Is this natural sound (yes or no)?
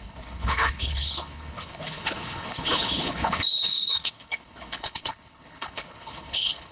no